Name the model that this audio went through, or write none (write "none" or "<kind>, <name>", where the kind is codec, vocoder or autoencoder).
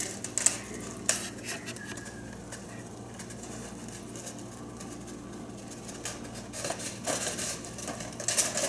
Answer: none